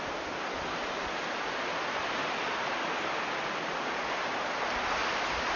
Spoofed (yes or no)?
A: no